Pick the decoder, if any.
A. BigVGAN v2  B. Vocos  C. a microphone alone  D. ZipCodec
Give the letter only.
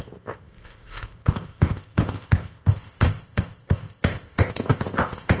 D